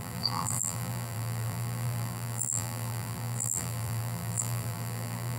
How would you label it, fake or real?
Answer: fake